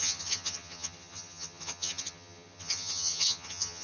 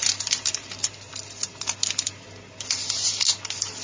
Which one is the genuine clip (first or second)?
second